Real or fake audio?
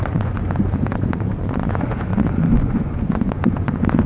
fake